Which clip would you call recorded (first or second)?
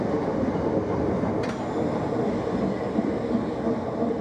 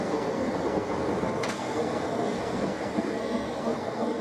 first